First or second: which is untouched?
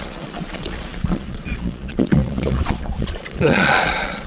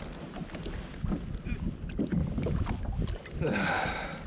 second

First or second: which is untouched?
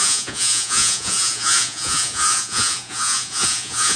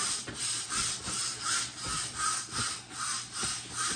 second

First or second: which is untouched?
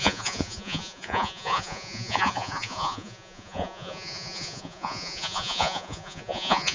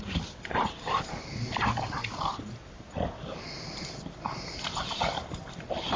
second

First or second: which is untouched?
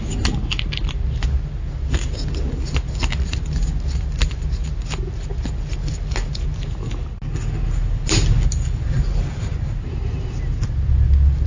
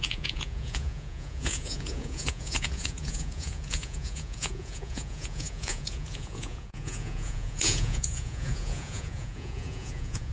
first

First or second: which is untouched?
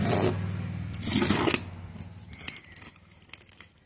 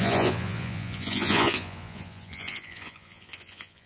first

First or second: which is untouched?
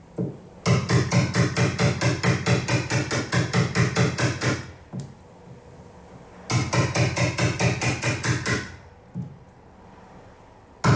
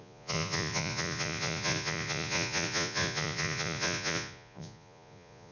first